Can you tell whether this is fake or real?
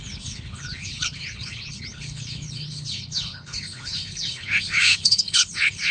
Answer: fake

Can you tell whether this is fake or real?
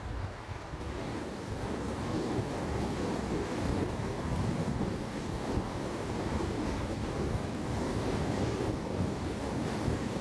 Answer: fake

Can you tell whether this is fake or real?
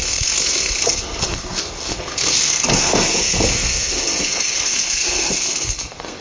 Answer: fake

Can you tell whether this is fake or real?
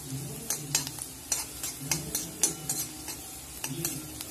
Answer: real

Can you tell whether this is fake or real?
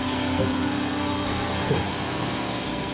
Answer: fake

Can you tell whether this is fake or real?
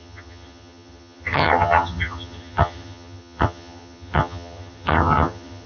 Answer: fake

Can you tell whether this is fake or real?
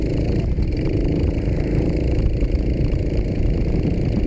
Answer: fake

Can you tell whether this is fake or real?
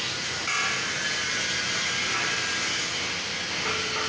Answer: real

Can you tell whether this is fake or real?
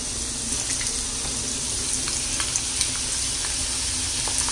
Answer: real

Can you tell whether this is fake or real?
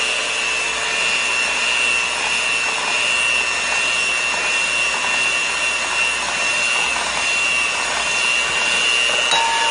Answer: real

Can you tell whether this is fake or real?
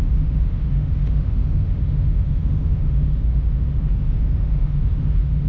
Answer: fake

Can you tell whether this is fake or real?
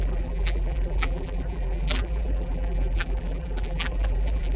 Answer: fake